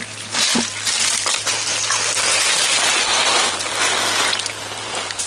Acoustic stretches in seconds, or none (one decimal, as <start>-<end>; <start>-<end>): 0.0-5.3

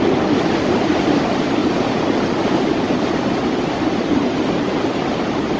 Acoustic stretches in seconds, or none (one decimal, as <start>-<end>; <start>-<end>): 0.0-5.6

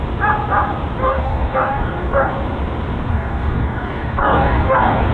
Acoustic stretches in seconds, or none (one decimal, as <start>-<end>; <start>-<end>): 0.0-1.0; 2.3-3.1

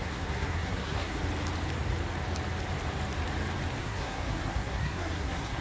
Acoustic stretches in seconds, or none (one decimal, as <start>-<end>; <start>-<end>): 1.2-3.8

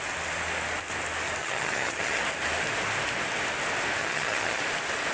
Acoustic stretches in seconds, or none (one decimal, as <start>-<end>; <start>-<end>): 0.0-1.4; 2.2-4.0; 4.6-5.1

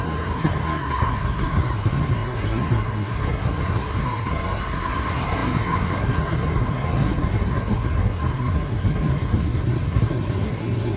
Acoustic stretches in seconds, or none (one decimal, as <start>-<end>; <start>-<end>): none

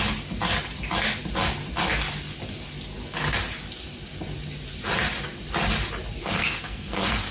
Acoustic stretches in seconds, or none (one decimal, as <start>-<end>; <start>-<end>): 0.0-6.2

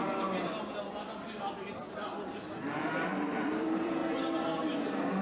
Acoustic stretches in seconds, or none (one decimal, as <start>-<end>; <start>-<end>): 0.0-2.3; 4.0-5.2